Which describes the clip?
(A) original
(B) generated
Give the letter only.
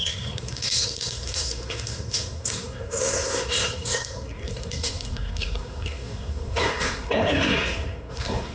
B